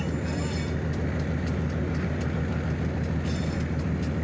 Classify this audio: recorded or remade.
recorded